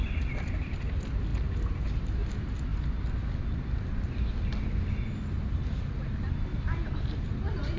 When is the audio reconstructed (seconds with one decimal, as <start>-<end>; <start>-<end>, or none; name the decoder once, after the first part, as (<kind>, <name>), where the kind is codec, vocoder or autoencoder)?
none